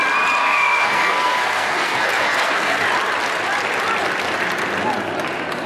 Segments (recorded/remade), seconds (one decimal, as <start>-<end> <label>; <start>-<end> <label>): 0.0-0.4 recorded; 0.4-2.8 remade; 2.8-5.7 recorded